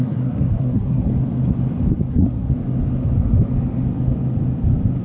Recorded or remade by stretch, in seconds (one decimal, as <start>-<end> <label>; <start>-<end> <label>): 0.0-1.1 remade; 1.1-2.1 recorded; 2.1-2.5 remade; 2.5-5.0 recorded